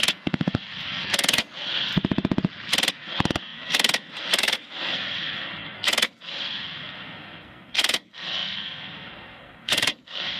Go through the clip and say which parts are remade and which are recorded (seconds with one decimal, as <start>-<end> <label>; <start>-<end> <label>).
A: 0.0-1.9 remade; 1.9-2.9 recorded; 2.9-10.4 remade